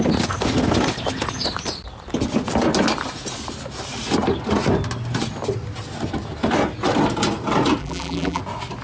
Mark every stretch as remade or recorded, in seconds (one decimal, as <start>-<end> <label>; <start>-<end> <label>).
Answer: 0.0-7.8 recorded; 7.8-8.4 remade; 8.4-8.8 recorded